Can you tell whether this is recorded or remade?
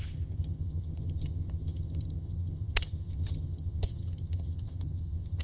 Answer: remade